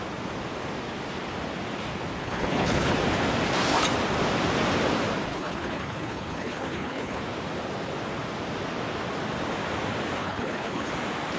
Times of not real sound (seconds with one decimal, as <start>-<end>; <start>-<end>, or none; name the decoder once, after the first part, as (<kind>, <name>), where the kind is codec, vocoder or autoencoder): 2.2-2.9 (codec, HILCodec); 5.3-7.2; 10.2-10.9